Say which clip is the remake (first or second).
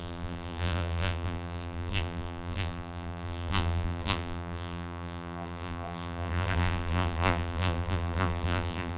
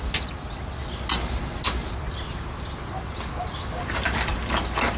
first